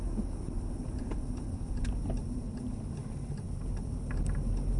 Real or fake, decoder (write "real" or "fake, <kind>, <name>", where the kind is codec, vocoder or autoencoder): real